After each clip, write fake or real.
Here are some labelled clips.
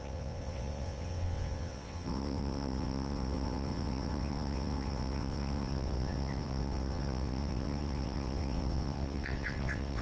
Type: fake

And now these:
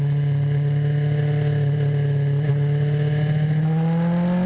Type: real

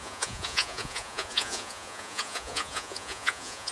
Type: fake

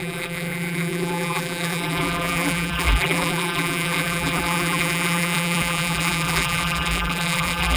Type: fake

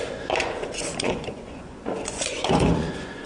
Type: fake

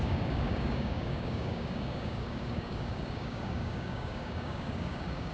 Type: fake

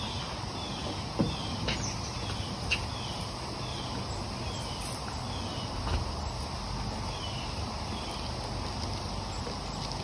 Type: real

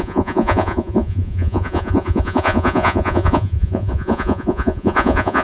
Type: fake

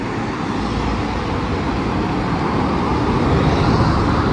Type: real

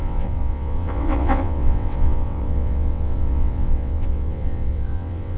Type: fake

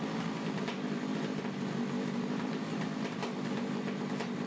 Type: real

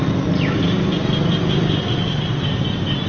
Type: real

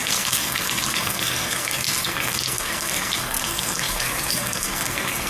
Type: fake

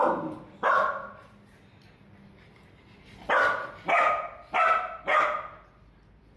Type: real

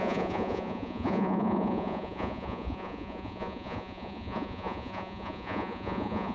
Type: fake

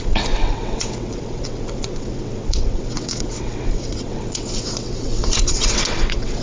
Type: fake